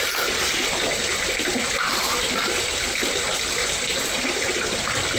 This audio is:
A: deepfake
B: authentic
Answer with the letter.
B